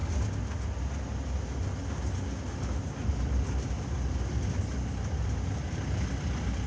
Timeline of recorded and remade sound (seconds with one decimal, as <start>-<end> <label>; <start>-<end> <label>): 0.0-6.7 recorded